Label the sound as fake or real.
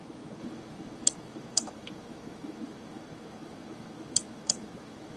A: fake